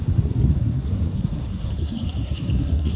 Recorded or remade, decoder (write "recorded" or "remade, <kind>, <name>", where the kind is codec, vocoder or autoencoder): remade, codec, SNAC